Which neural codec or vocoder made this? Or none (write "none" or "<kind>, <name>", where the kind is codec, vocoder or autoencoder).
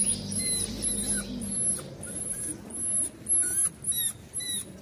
none